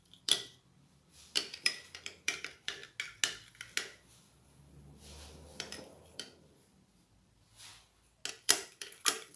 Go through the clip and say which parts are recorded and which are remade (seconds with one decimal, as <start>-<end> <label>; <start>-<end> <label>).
0.0-2.8 remade; 2.8-4.1 recorded; 4.1-7.7 remade; 7.7-8.3 recorded; 8.3-9.4 remade